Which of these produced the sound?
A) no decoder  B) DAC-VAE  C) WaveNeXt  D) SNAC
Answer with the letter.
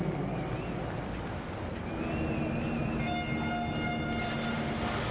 A